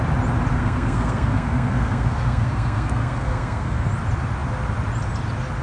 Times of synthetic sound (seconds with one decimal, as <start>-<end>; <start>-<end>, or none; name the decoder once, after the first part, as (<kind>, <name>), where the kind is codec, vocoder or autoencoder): 0.5-3.9 (codec, SNAC)